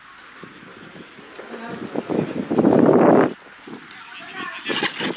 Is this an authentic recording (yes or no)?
yes